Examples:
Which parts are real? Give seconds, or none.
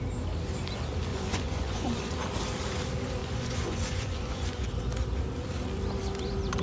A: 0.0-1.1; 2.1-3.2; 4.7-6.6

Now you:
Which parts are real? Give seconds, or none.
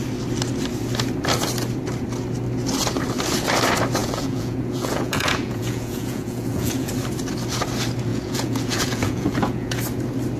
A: 0.0-4.0; 6.9-8.1; 9.8-10.4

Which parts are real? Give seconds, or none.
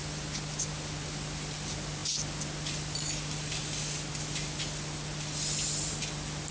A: 0.0-6.5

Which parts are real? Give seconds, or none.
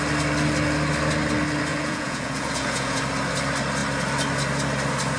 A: 0.0-1.7; 3.0-5.2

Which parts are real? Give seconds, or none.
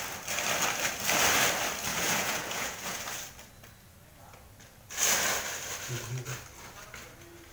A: 0.0-1.9; 3.0-7.5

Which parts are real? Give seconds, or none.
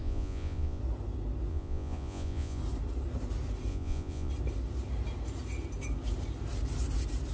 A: 0.8-1.5; 2.6-3.7; 4.3-7.3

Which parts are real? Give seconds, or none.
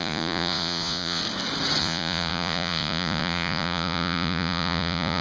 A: 1.2-1.8